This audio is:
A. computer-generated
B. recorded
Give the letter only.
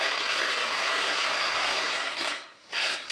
A